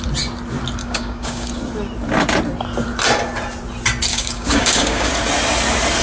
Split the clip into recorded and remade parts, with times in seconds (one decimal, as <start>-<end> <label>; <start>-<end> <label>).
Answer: 0.0-0.8 recorded; 0.8-1.5 remade; 1.5-4.1 recorded; 4.1-5.1 remade; 5.1-6.0 recorded